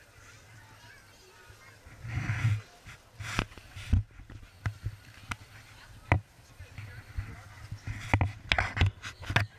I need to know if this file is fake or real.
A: real